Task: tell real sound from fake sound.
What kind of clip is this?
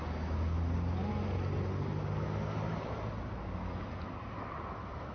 real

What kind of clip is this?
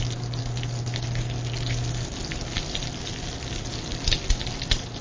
real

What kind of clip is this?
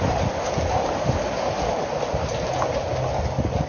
real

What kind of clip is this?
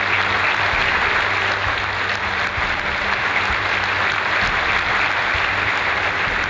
real